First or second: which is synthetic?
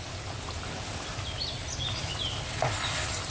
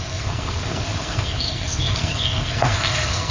second